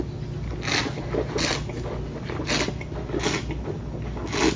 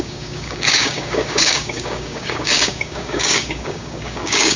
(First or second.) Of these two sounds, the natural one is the first